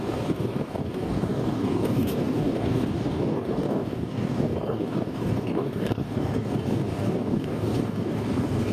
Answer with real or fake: fake